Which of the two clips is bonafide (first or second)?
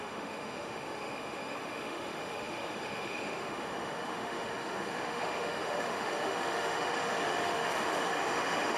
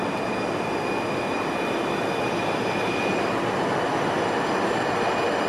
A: second